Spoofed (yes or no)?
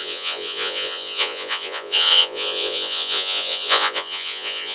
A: yes